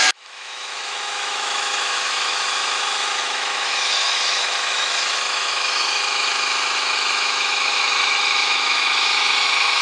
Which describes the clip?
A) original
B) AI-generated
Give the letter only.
B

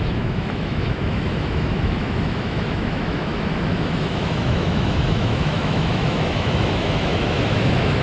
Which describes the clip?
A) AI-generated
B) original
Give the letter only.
A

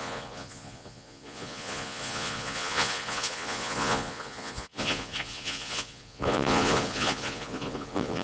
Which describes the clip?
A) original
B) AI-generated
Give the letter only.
B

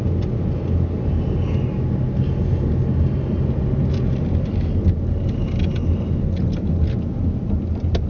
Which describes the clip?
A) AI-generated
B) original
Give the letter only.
B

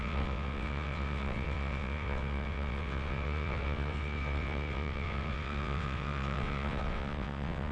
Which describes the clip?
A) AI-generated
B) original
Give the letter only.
A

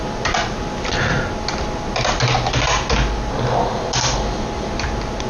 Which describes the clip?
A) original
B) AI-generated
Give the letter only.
A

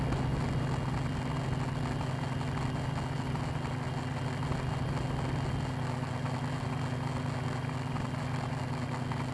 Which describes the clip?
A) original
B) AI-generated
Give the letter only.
A